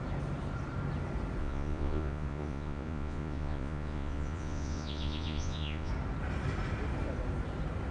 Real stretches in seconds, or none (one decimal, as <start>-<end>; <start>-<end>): 0.0-1.4; 5.9-7.9